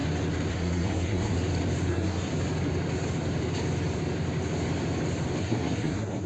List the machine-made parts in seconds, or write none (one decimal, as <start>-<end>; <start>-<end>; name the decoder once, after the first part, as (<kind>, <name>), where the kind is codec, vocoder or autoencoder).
0.5-1.3 (codec, SNAC); 1.9-2.3; 5.4-6.3